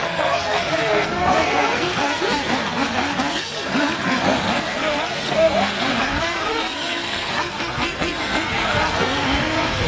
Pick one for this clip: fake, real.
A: fake